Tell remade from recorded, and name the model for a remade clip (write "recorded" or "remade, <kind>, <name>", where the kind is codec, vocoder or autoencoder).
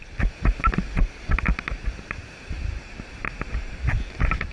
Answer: remade, vocoder, BigVGAN v2